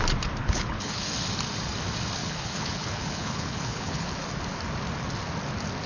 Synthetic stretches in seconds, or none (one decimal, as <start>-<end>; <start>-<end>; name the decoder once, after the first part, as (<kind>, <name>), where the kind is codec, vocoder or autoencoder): 0.4-1.1 (codec, HILCodec); 2.2-4.1